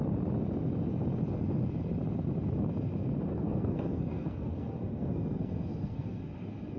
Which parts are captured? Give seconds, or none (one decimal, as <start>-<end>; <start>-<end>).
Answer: 0.0-3.3; 6.2-6.8